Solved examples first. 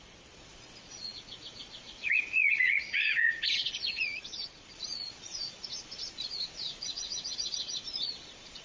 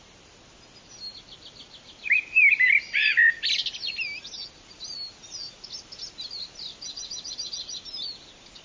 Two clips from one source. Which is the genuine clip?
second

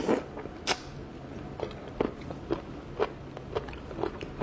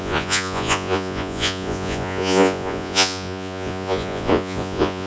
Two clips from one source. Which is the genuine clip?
first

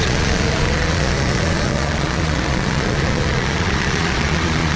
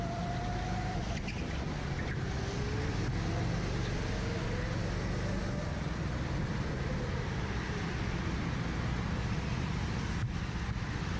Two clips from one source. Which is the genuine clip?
second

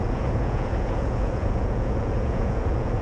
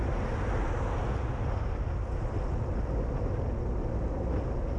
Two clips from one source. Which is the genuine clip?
second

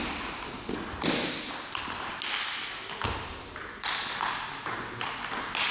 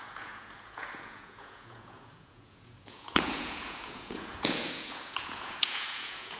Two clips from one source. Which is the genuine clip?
first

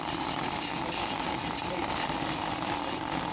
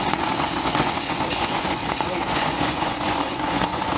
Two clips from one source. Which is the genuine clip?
first